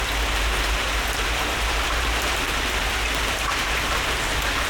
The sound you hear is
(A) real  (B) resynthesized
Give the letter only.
A